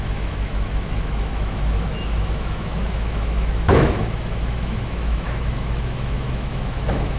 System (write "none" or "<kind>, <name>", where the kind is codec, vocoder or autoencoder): autoencoder, DAC-VAE